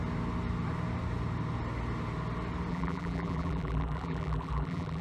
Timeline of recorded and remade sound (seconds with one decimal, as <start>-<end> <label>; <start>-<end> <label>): 0.0-2.7 recorded; 2.7-5.0 remade